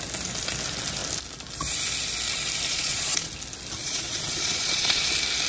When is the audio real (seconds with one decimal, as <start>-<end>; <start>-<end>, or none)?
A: 0.0-2.7; 3.3-3.8; 5.1-5.5